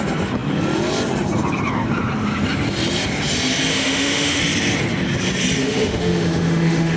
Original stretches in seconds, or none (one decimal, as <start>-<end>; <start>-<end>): 0.0-3.7; 4.4-5.6